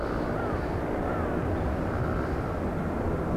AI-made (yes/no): no